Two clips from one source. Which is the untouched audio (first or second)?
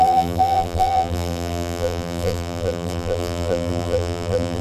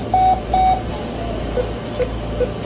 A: second